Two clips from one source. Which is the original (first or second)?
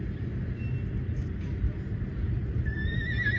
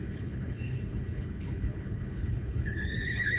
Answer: first